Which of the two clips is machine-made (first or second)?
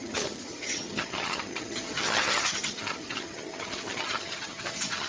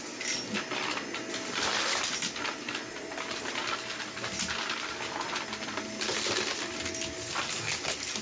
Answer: first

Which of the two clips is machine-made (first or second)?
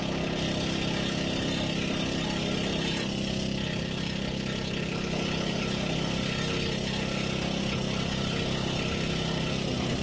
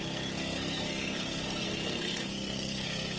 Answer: second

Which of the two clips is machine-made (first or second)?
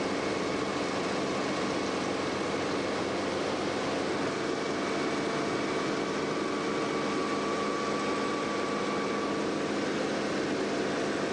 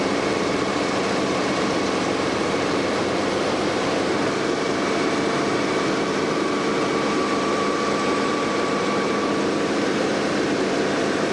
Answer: second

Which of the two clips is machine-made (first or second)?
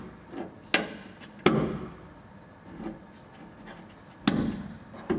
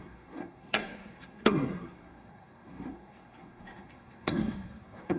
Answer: second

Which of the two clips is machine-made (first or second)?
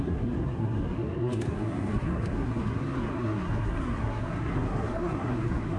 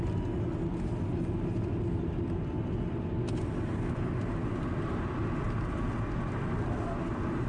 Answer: first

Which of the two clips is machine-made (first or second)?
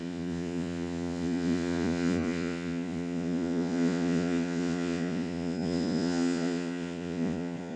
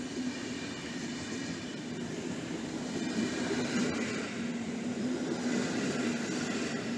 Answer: first